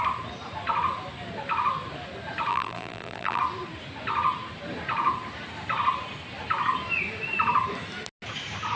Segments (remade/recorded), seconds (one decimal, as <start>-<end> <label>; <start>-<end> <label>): 0.0-2.5 recorded; 2.5-3.4 remade; 3.4-8.8 recorded